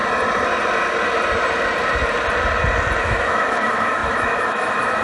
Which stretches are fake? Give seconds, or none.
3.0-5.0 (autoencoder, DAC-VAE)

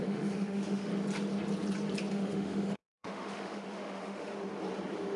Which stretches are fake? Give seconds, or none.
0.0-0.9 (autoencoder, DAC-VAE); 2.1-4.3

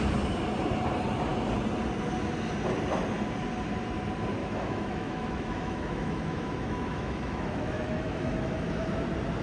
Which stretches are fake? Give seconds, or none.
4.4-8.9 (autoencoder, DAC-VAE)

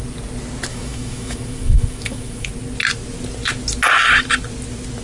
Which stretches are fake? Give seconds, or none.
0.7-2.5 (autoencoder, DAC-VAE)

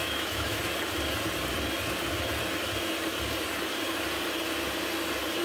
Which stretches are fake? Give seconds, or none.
0.0-0.6 (autoencoder, DAC-VAE)